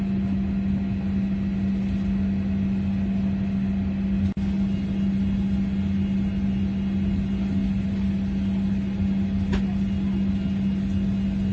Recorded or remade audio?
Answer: recorded